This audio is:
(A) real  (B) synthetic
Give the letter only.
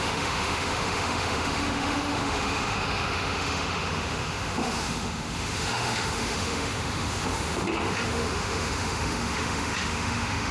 B